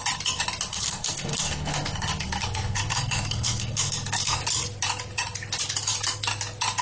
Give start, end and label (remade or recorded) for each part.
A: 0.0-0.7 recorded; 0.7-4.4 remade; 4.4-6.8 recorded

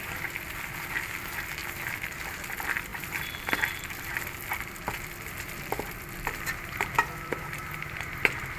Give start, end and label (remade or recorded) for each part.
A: 0.0-2.9 recorded; 2.9-7.4 remade; 7.4-8.6 recorded

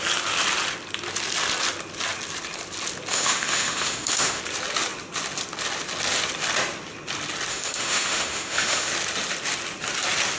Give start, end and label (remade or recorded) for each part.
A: 0.0-3.1 recorded; 3.1-4.4 remade; 4.4-7.5 recorded; 7.5-8.9 remade; 8.9-10.4 recorded

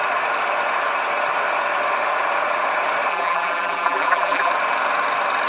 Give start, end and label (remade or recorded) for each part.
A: 0.0-3.1 recorded; 3.1-4.5 remade; 4.5-5.5 recorded

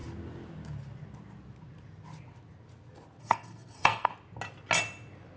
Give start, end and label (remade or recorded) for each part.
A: 0.0-3.2 recorded; 3.2-4.1 remade; 4.1-5.4 recorded

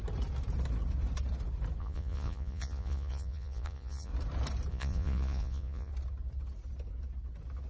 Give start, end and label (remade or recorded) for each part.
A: 0.0-1.8 recorded; 1.8-4.1 remade; 4.1-4.7 recorded; 4.7-5.9 remade; 5.9-7.7 recorded